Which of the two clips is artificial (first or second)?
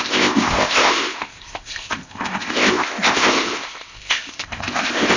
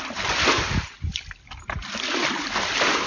first